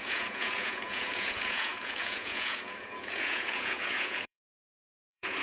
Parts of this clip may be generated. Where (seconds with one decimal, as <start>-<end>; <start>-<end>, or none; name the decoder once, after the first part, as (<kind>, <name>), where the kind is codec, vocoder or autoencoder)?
0.0-5.4 (vocoder, Vocos)